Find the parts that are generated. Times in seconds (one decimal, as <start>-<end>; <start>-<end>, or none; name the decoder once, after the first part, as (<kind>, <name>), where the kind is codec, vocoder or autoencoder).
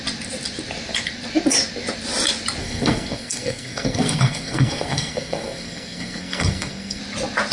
2.6-7.0 (codec, SNAC)